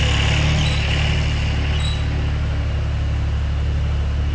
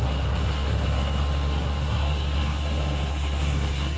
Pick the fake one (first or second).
second